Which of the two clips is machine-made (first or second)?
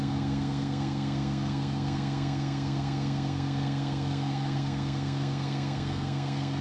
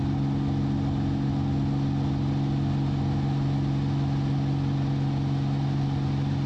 first